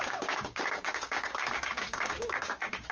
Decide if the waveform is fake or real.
fake